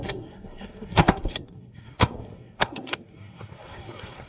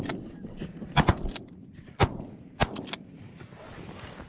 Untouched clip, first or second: second